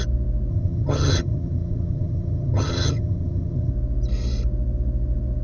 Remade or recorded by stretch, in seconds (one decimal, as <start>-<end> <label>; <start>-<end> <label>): 0.0-0.5 recorded; 0.5-3.7 remade; 3.7-5.4 recorded